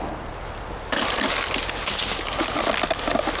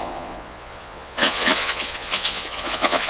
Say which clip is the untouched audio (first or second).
first